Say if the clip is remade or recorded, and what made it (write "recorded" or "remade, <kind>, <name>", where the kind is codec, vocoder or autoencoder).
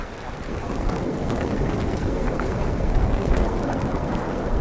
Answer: remade, codec, SNAC